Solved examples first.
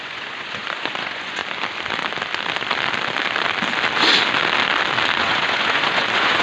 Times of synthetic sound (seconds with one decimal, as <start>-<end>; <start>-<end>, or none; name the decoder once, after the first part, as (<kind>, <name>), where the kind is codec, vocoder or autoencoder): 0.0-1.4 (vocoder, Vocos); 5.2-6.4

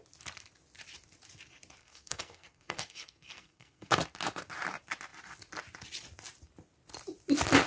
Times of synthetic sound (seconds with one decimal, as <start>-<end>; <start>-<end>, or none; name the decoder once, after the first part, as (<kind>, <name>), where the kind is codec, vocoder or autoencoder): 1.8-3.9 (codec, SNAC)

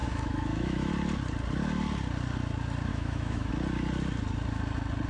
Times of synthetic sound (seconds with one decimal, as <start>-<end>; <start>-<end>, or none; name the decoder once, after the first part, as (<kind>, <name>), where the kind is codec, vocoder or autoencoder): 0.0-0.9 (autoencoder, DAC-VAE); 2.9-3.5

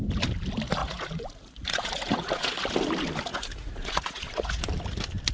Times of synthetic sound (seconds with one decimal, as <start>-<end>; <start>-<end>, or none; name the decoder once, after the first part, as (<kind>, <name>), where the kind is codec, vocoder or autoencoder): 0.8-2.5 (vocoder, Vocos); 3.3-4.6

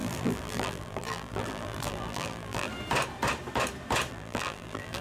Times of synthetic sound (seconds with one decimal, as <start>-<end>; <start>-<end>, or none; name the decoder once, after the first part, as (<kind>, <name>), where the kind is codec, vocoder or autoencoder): 0.0-2.7 (vocoder, BigVGAN v2); 4.1-5.0

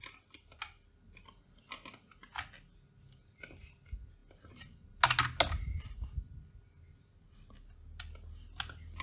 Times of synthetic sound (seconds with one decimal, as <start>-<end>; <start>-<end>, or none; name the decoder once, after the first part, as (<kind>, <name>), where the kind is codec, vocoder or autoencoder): none

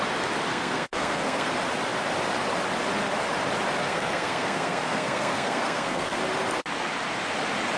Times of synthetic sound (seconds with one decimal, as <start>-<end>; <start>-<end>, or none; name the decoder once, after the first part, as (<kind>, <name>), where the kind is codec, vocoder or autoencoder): 0.5-1.5 (codec, SNAC); 3.8-6.2